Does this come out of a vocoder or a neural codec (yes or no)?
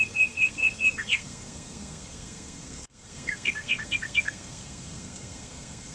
yes